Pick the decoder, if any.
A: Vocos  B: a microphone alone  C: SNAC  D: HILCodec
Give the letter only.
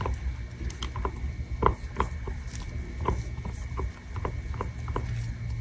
B